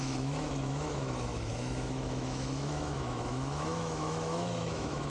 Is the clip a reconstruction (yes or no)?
yes